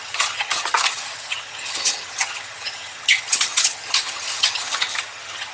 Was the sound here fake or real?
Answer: fake